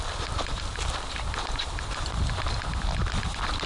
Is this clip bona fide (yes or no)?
no